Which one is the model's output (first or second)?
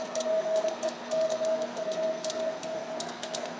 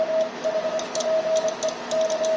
first